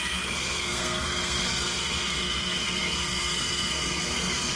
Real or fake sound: fake